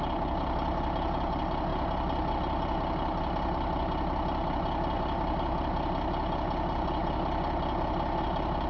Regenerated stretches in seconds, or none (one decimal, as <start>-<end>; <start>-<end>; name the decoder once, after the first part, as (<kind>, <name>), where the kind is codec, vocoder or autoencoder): none